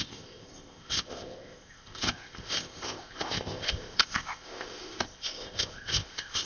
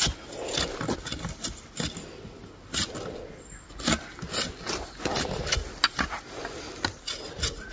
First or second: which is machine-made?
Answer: first